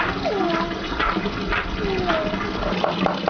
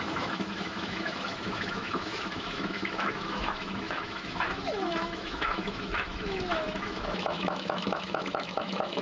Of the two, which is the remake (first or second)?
second